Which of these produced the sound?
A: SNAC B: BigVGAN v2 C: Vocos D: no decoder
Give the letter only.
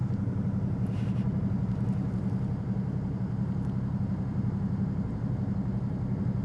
D